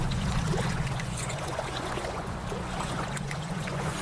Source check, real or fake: fake